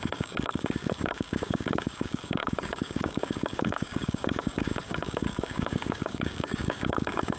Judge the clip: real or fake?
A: fake